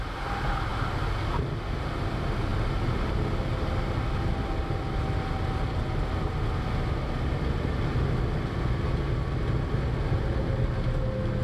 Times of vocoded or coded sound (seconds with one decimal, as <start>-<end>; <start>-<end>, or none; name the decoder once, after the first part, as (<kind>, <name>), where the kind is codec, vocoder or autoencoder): none